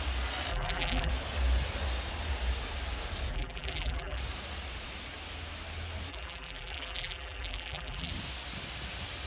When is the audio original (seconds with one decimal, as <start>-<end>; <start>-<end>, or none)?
0.0-0.5; 1.1-3.3; 4.2-6.1; 8.1-9.3